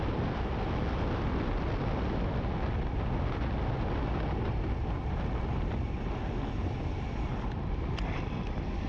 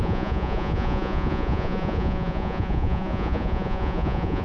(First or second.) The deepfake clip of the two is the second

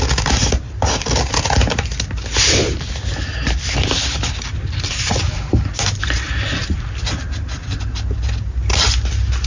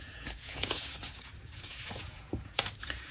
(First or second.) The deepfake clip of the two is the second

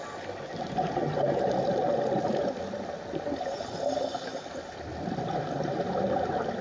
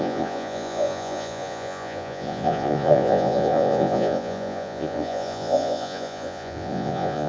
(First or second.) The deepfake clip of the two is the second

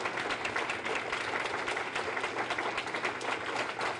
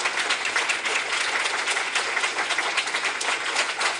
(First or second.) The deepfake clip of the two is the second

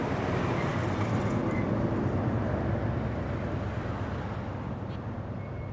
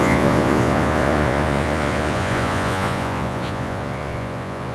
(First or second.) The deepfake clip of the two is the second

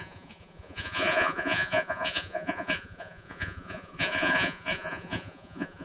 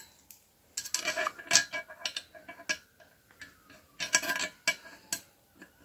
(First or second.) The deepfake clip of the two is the first